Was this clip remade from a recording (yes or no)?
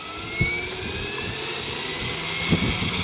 no